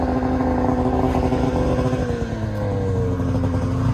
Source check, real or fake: real